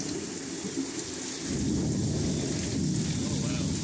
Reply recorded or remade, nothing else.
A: recorded